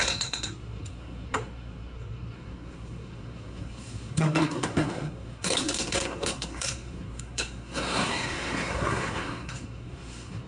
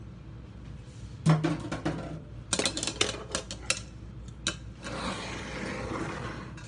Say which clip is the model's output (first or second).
first